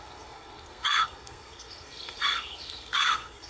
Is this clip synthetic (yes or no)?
yes